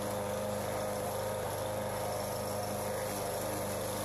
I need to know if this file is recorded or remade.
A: recorded